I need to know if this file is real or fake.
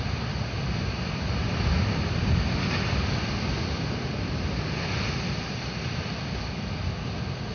real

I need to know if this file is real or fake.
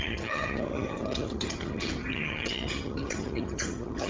fake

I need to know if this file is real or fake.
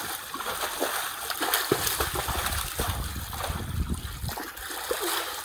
real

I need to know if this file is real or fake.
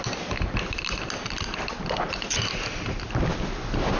real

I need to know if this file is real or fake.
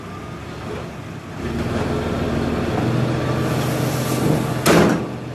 real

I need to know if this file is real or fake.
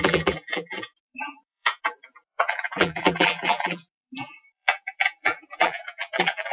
fake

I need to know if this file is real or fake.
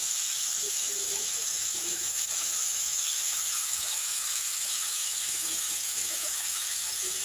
fake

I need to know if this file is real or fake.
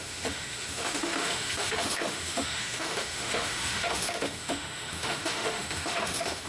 fake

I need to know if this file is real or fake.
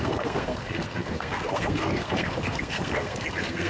fake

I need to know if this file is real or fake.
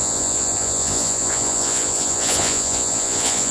fake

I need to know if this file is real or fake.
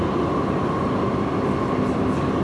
real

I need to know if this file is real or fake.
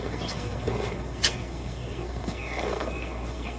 fake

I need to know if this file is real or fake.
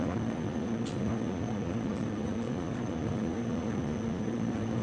fake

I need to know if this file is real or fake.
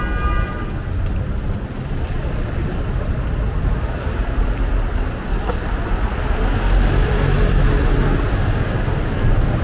real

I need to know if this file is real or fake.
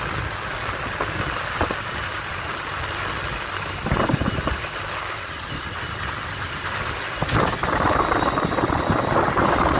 real